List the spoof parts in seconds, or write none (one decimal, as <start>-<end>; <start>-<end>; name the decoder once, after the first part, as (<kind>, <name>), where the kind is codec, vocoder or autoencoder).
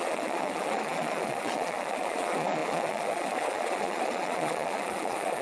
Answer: 0.0-5.4 (vocoder, Vocos)